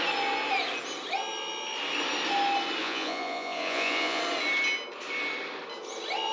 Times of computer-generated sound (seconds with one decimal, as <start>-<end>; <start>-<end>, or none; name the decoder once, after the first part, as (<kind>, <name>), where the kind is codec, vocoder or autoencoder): 2.8-4.2 (vocoder, Vocos)